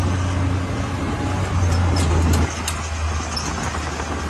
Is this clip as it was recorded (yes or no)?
yes